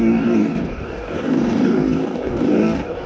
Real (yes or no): no